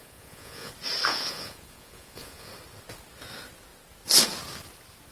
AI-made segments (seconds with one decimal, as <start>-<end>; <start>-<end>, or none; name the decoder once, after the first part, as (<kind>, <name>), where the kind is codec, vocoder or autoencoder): 0.0-0.7 (vocoder, Vocos); 1.1-2.5